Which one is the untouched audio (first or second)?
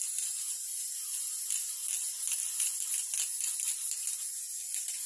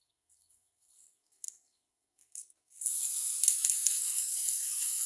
first